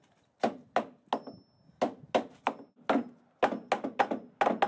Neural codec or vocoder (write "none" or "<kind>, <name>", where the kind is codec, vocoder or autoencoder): none